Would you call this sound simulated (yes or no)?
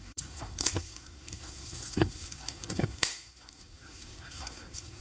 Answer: yes